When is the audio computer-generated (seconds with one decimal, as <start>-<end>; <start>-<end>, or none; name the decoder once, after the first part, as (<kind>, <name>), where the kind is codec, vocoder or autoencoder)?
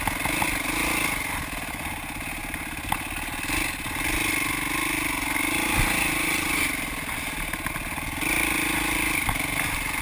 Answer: none